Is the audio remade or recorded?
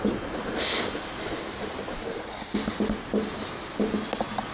recorded